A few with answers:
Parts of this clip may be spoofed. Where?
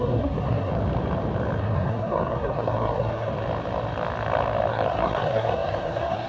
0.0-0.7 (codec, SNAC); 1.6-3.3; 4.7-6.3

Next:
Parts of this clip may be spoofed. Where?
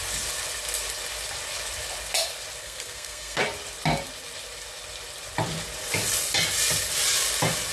2.6-3.4 (codec, SNAC)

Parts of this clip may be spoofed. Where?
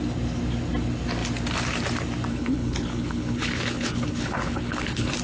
2.3-5.2 (codec, HILCodec)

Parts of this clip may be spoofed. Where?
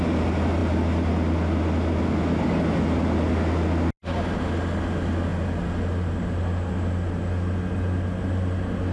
none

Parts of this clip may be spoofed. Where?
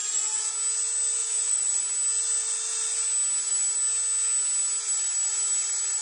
0.0-0.5 (vocoder, Vocos); 1.2-1.8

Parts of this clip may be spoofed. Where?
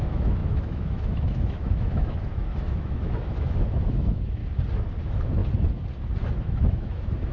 0.0-4.4 (autoencoder, DAC-VAE); 5.0-5.4; 6.4-7.3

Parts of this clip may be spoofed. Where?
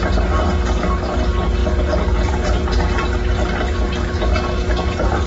none